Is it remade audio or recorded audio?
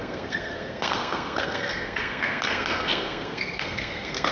remade